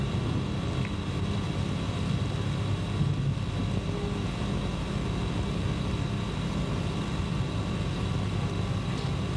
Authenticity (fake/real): real